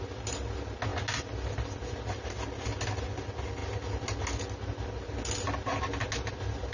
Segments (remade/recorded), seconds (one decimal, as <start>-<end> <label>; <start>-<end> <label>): 0.0-6.7 recorded